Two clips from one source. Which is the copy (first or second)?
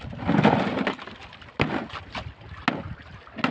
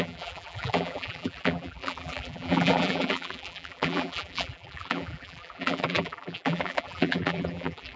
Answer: second